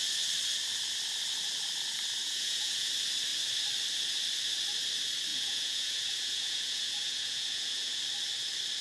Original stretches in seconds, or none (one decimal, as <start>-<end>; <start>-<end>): 0.0-2.2; 2.9-5.3; 8.0-8.8